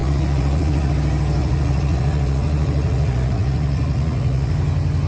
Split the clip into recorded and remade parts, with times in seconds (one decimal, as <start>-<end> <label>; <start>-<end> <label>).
0.0-0.9 remade; 0.9-1.4 recorded; 1.4-4.5 remade; 4.5-5.1 recorded